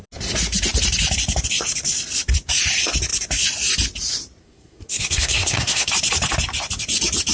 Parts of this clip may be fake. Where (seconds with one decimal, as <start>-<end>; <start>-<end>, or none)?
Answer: 4.4-5.9